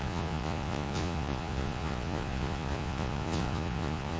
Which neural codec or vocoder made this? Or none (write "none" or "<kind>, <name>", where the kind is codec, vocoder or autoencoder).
vocoder, Vocos